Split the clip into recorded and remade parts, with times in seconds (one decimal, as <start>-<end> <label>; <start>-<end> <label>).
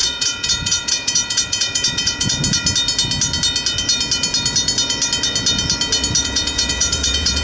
0.0-2.4 remade; 2.4-6.2 recorded; 6.2-7.4 remade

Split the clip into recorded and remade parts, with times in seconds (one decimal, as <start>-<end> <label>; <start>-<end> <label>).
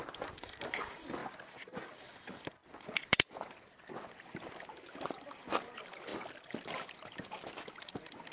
0.0-8.3 recorded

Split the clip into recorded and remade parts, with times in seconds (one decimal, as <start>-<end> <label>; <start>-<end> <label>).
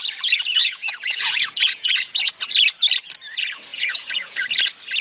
0.0-0.6 recorded; 0.6-2.3 remade; 2.3-3.7 recorded; 3.7-4.4 remade; 4.4-5.0 recorded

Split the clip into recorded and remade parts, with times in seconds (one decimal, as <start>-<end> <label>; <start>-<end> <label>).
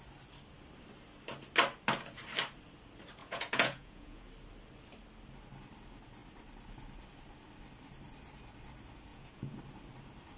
0.0-3.2 recorded; 3.2-4.3 remade; 4.3-9.1 recorded; 9.1-9.6 remade; 9.6-10.4 recorded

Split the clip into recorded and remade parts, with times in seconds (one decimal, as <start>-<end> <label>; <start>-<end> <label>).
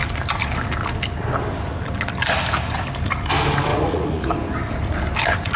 0.0-3.7 recorded; 3.7-4.3 remade; 4.3-5.6 recorded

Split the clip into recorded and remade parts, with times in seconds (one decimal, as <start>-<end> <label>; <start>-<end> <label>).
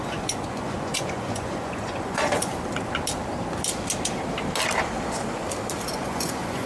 0.0-2.5 remade; 2.5-5.9 recorded; 5.9-6.7 remade